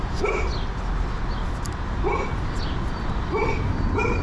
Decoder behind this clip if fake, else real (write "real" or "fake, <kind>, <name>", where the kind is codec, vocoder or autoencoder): real